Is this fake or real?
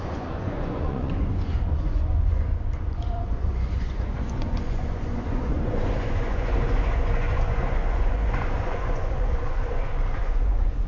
fake